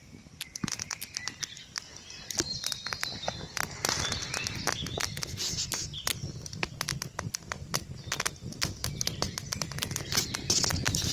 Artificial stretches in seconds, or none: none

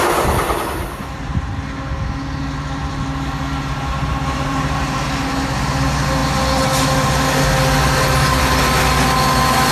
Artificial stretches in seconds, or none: 4.1-5.0 (vocoder, BigVGAN v2)

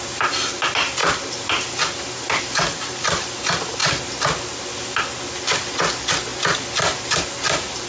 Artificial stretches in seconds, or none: 3.8-5.0 (vocoder, BigVGAN v2)

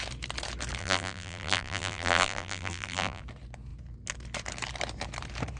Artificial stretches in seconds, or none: 0.8-3.2 (vocoder, BigVGAN v2)

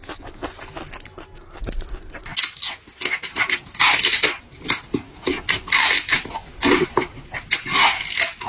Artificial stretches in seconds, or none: none

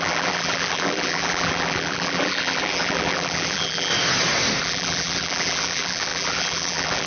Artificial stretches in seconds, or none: 0.0-3.9 (vocoder, BigVGAN v2); 4.6-7.1

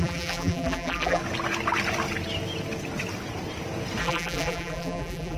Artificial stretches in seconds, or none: 0.0-1.2 (vocoder, BigVGAN v2); 4.0-5.4